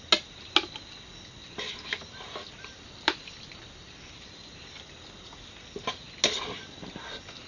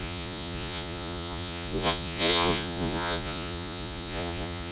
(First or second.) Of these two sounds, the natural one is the first